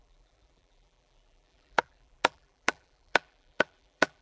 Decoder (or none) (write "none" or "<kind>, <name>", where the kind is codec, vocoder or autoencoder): vocoder, BigVGAN v2